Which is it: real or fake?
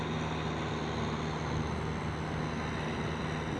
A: real